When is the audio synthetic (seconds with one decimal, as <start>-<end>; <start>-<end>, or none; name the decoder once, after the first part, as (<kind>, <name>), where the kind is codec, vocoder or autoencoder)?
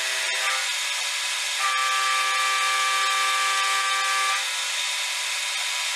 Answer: none